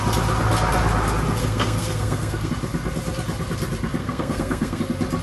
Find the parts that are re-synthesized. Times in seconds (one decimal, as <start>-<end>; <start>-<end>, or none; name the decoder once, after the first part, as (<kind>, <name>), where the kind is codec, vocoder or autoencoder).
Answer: 1.4-2.5 (codec, SNAC); 4.0-4.8